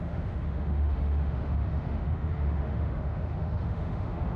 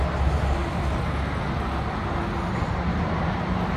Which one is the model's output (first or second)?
first